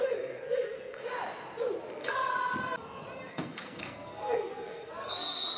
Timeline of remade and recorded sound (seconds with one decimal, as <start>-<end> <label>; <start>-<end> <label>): 0.0-1.1 remade; 1.1-1.9 recorded; 1.9-2.3 remade; 2.3-3.3 recorded; 3.3-5.6 remade